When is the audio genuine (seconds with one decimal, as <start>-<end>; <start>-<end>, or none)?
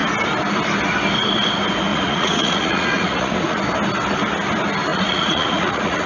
0.0-1.9; 3.6-4.9